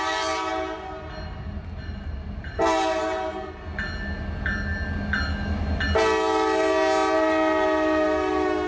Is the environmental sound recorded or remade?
recorded